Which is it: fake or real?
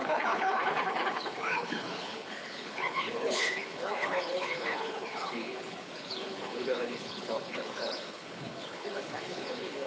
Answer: fake